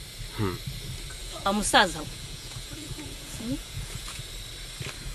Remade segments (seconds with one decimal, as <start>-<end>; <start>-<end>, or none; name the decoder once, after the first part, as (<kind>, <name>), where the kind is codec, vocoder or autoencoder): 1.2-4.3 (vocoder, Vocos)